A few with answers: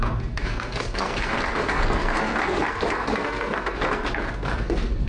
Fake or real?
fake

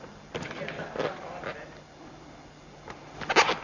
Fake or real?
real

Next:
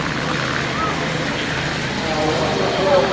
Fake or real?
real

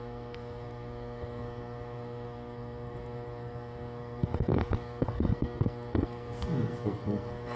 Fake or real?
fake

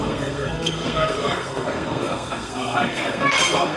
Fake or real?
fake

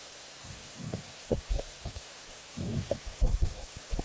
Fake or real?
fake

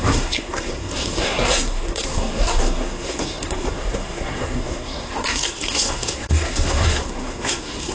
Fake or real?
fake